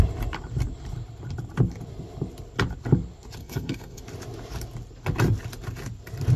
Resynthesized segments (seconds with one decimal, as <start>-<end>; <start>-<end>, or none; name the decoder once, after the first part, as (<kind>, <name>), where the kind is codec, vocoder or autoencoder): 3.4-4.0 (codec, SNAC)